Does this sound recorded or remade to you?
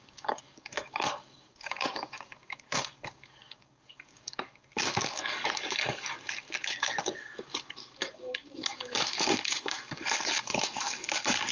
remade